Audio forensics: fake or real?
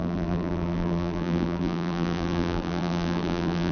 fake